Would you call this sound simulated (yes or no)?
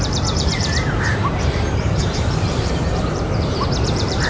yes